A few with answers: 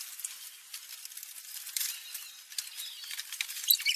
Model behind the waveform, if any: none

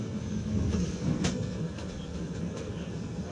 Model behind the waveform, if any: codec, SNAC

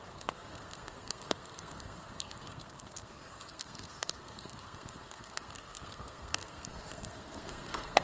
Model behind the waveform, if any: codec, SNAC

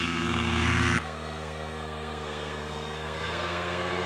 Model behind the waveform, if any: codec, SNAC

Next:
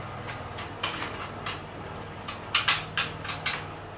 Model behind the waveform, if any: none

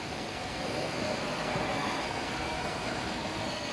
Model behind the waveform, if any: codec, SNAC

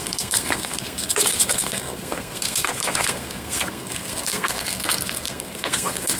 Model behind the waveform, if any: codec, SNAC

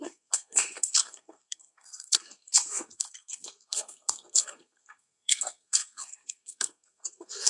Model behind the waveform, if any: codec, SNAC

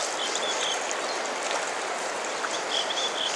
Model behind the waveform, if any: none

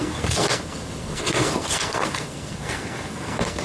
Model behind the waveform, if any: codec, SNAC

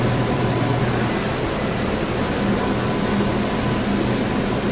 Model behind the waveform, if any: none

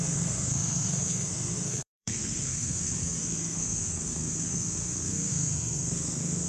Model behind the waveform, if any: codec, SNAC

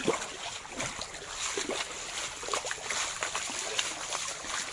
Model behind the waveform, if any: none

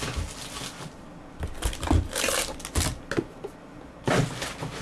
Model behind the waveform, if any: none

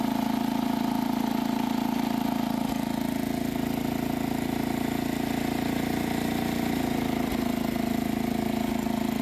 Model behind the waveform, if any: none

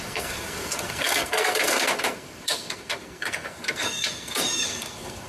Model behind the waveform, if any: codec, SNAC